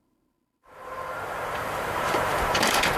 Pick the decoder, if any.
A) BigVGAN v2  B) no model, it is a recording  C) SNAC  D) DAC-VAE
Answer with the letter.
A